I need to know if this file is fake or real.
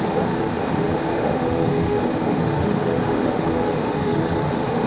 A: fake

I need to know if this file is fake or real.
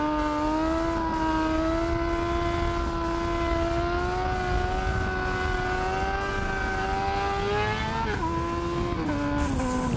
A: real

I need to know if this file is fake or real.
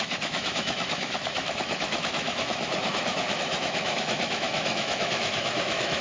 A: fake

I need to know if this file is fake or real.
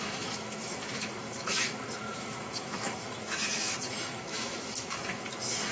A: fake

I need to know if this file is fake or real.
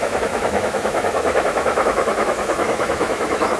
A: fake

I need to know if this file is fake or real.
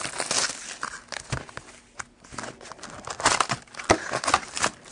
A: real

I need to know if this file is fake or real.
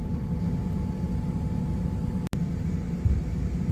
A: real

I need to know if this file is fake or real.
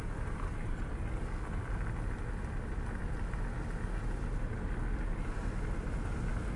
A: real